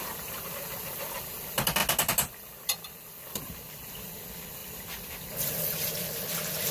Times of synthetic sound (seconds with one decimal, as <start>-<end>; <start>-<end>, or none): none

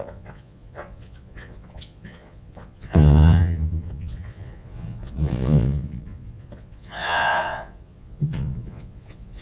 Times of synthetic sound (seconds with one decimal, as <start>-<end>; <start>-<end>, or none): 0.0-9.4